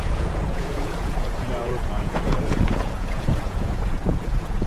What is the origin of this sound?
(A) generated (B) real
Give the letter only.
A